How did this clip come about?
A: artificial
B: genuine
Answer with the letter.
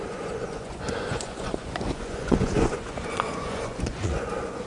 A